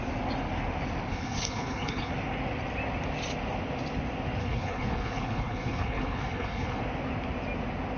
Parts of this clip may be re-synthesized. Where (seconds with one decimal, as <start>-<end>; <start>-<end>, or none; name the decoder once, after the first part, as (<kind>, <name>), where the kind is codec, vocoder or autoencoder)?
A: 1.1-2.1 (codec, HILCodec); 4.4-6.8